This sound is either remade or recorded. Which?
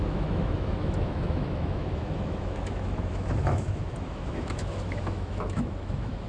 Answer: remade